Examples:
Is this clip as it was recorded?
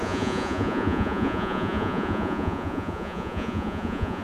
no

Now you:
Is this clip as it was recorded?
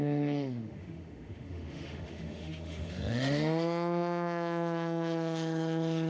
no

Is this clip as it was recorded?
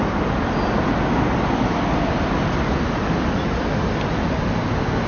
yes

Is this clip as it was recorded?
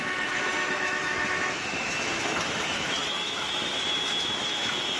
no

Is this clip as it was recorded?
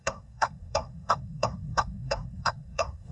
no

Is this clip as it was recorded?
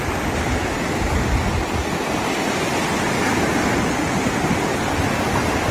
yes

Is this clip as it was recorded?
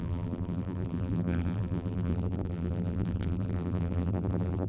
no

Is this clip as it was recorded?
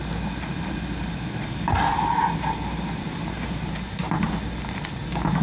yes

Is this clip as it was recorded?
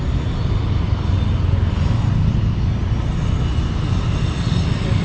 yes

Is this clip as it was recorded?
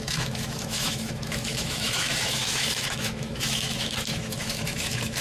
no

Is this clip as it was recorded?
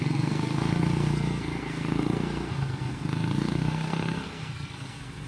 no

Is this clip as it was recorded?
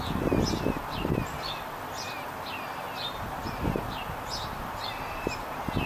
yes